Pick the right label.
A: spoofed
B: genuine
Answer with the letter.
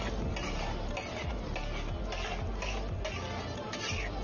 B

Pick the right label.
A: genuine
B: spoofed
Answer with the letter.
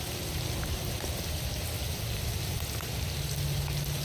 A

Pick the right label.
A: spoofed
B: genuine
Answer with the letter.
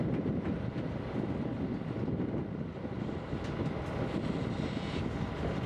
B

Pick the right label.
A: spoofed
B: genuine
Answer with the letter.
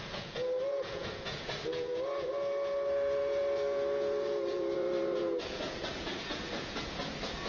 A